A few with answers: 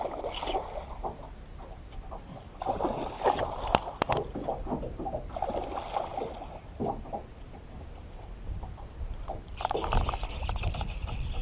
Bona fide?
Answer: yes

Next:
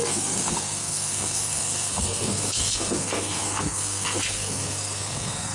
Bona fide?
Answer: no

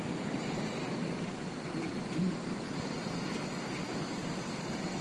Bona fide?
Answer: yes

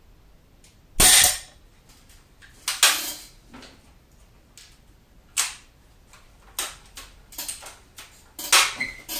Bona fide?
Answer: yes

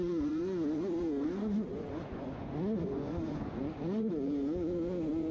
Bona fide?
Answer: no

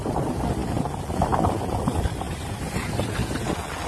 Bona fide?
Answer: yes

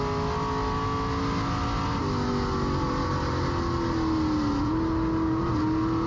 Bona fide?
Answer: yes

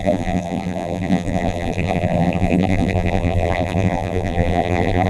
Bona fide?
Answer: no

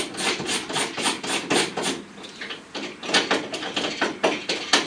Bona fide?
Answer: yes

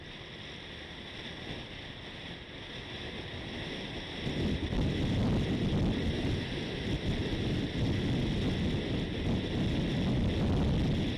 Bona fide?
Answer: yes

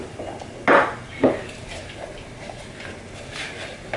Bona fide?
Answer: yes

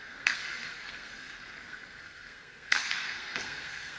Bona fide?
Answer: no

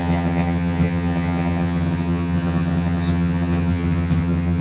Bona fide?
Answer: no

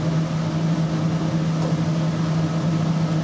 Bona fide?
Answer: yes